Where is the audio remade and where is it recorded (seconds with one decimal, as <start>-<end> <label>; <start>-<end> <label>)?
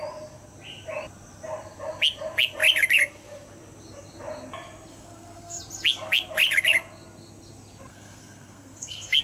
0.0-4.9 recorded; 4.9-5.6 remade; 5.6-7.9 recorded; 7.9-9.2 remade